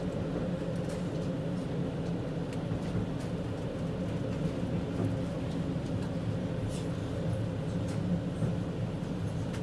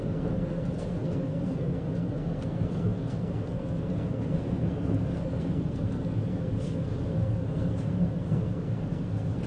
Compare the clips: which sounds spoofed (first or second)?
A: second